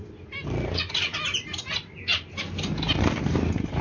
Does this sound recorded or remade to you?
recorded